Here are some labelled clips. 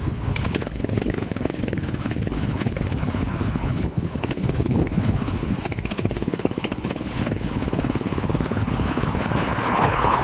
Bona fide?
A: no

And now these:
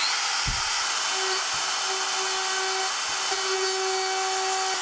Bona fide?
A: yes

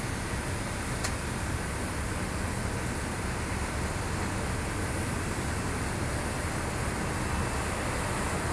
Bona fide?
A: yes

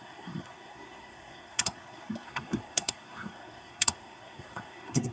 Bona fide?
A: no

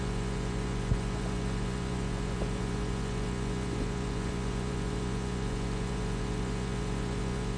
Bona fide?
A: no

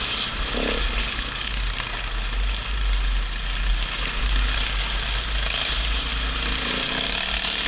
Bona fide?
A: yes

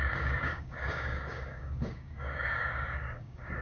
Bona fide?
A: no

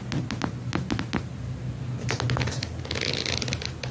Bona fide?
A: yes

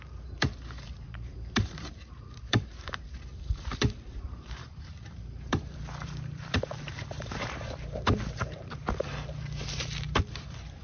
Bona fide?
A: no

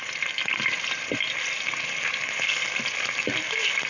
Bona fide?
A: yes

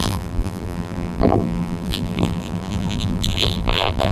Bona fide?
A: no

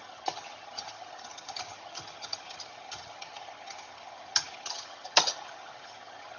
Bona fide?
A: no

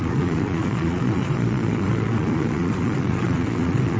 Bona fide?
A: no